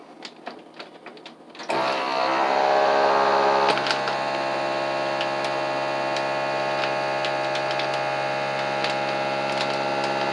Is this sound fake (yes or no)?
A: no